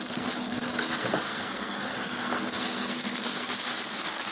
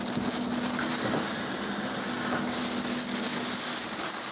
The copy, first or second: first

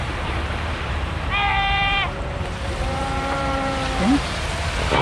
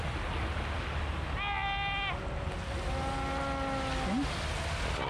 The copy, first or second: first